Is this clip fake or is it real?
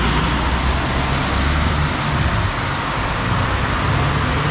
real